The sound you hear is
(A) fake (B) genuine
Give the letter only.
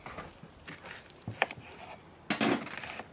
B